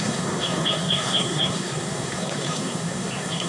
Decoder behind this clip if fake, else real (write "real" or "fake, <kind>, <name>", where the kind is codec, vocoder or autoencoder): fake, codec, SNAC